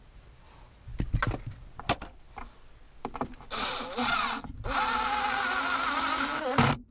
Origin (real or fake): real